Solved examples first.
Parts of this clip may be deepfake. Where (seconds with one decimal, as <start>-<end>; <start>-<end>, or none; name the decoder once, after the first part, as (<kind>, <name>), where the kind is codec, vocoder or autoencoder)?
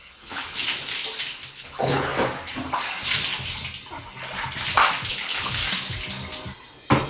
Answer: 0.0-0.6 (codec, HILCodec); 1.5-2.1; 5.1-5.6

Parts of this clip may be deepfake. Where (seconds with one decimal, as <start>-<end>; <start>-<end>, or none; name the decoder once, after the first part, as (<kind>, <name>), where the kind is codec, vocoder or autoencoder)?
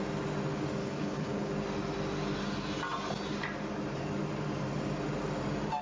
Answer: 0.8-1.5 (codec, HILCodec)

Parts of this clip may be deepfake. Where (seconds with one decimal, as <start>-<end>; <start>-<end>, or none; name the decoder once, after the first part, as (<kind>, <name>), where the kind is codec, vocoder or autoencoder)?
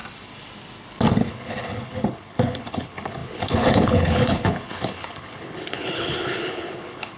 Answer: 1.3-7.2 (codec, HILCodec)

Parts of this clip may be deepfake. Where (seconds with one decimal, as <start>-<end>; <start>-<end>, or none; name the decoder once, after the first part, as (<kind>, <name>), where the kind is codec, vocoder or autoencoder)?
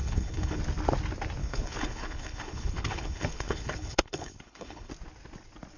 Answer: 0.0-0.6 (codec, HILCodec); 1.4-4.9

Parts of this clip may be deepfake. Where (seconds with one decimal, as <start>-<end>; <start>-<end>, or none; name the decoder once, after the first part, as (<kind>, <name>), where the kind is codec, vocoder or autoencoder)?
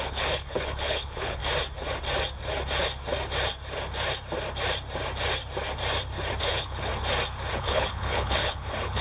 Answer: 0.0-1.4 (codec, HILCodec); 6.4-6.9; 7.5-9.0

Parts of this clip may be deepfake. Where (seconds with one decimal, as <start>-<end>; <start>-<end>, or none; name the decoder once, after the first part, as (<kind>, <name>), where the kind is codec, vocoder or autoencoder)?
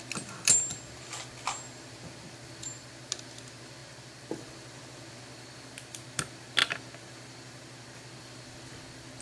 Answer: none